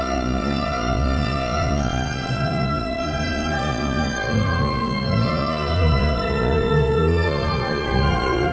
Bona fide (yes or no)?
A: no